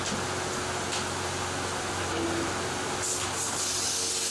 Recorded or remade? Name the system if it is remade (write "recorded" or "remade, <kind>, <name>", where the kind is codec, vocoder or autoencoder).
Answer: recorded